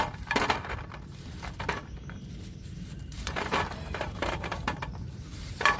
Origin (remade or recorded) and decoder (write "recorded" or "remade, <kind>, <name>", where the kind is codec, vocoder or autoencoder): remade, vocoder, BigVGAN v2